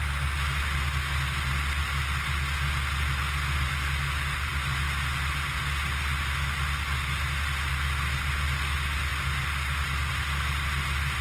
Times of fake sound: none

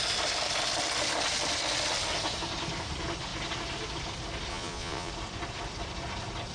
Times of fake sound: 4.5-5.1

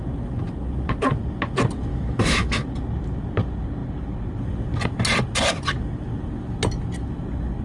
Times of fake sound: 1.9-2.6

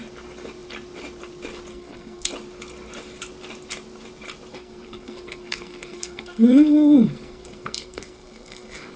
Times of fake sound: 1.7-2.3; 4.5-9.0

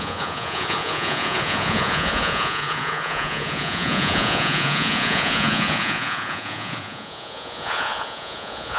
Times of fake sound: 0.0-8.8

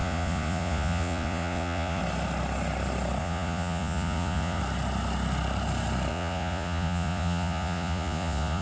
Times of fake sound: 0.0-2.0; 3.2-4.6; 6.1-8.6

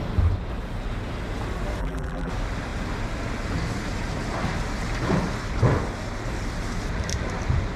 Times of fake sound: 1.8-2.3

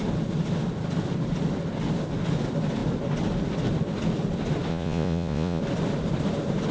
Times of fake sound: 4.7-5.6